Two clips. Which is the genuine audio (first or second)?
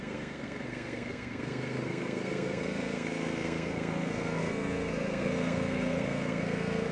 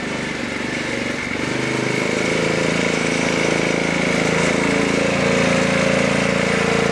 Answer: second